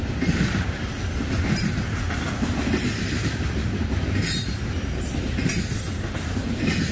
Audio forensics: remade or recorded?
recorded